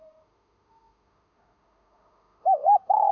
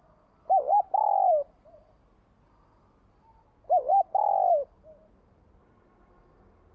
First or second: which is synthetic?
first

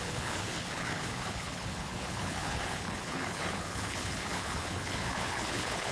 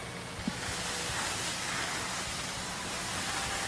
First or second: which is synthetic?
first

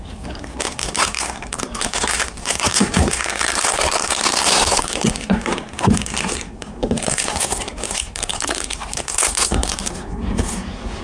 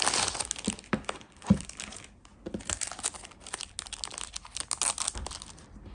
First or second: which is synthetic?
first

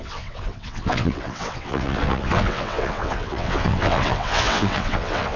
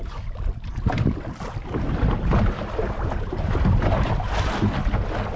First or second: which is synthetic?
first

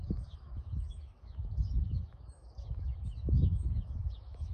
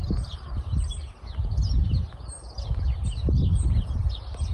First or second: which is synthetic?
first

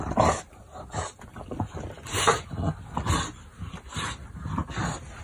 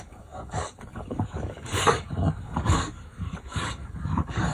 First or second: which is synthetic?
second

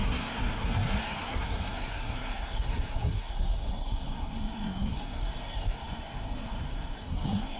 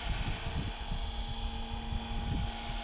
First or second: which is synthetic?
first